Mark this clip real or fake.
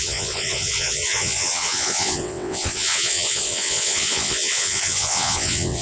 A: fake